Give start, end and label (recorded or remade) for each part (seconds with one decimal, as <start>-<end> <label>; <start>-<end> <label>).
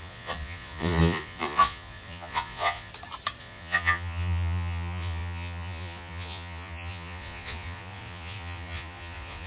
0.0-2.9 remade; 2.9-3.4 recorded; 3.4-9.5 remade